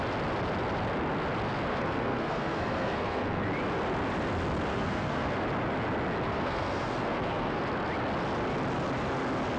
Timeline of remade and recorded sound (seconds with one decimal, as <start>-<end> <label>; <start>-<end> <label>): 0.0-1.7 recorded; 1.7-3.4 remade; 3.4-4.7 recorded; 4.7-5.4 remade; 5.4-6.3 recorded; 6.3-7.6 remade; 7.6-9.6 recorded